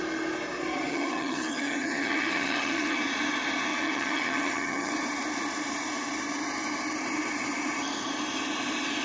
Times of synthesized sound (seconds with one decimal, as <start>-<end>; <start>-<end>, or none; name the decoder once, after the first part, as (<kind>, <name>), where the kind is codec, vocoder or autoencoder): 0.9-3.0 (vocoder, HiFi-GAN); 3.7-4.9